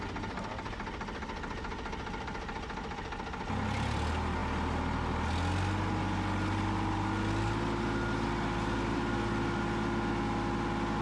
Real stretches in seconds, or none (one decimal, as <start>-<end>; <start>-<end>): 0.0-11.0